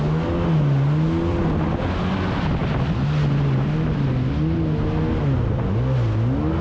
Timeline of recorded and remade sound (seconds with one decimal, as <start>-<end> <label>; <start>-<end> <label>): 0.0-6.6 recorded